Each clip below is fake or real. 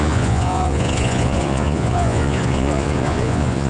fake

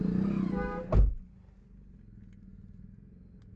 real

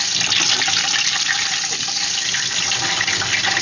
real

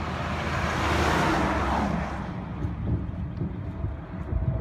real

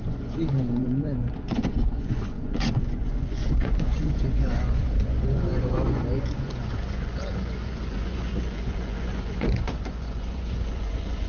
fake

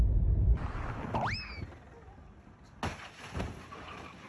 real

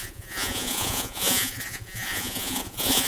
fake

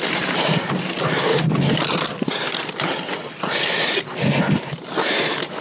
real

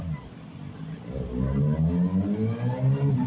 real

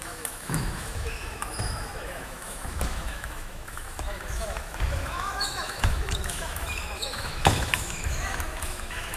fake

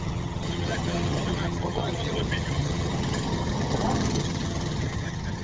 fake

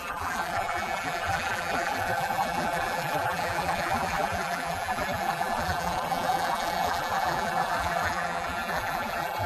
fake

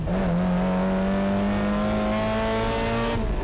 real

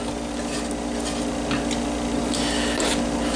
real